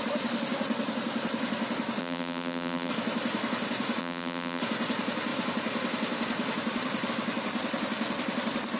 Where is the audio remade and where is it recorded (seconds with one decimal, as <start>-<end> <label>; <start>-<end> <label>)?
0.0-2.0 recorded; 2.0-2.9 remade; 2.9-4.0 recorded; 4.0-4.6 remade; 4.6-8.8 recorded